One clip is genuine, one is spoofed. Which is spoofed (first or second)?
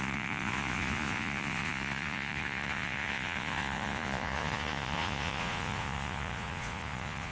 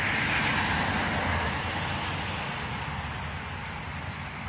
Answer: first